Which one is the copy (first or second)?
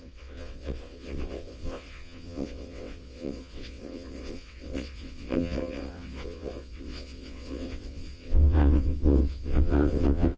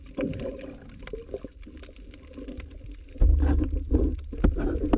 first